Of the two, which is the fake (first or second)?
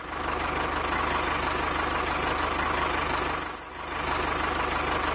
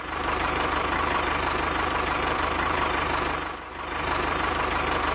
second